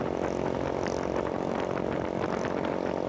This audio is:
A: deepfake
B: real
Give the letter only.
B